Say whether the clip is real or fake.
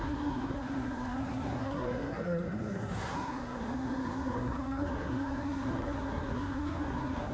fake